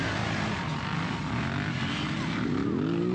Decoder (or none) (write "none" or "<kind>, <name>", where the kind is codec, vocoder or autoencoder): none